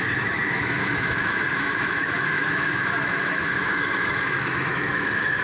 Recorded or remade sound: remade